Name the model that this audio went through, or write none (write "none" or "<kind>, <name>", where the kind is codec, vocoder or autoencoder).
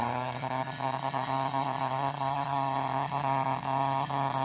vocoder, HiFi-GAN